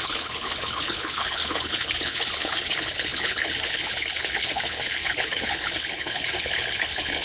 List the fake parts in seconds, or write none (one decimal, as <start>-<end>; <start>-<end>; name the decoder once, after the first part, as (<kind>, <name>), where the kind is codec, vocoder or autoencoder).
0.0-7.2 (codec, HILCodec)